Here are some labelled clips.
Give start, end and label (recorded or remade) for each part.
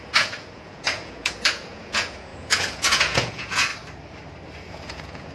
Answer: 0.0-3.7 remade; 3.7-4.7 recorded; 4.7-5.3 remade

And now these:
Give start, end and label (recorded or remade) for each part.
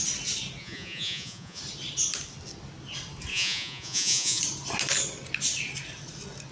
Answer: 0.0-0.6 recorded; 0.6-1.6 remade; 1.6-3.3 recorded; 3.3-4.4 remade; 4.4-6.5 recorded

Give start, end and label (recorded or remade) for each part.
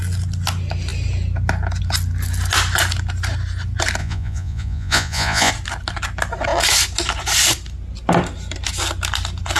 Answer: 0.0-4.0 recorded; 4.0-5.5 remade; 5.5-9.6 recorded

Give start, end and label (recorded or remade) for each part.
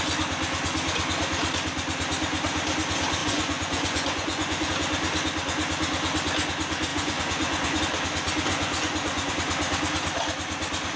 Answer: 0.0-3.2 recorded; 3.2-4.7 remade; 4.7-6.9 recorded; 6.9-7.8 remade; 7.8-8.5 recorded; 8.5-9.3 remade; 9.3-11.0 recorded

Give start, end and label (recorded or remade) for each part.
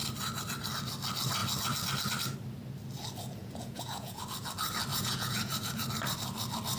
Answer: 0.0-3.4 recorded; 3.4-4.2 remade; 4.2-4.9 recorded; 4.9-5.7 remade; 5.7-6.8 recorded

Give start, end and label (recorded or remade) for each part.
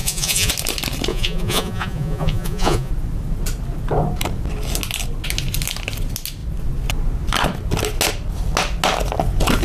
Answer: 0.0-0.5 remade; 0.5-1.1 recorded; 1.1-2.9 remade; 2.9-9.6 recorded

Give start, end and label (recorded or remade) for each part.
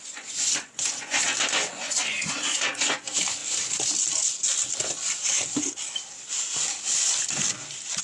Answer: 0.0-3.4 remade; 3.4-8.0 recorded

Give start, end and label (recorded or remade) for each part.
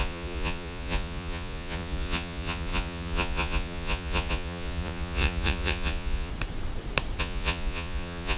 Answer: 0.0-6.3 remade; 6.3-7.2 recorded; 7.2-8.4 remade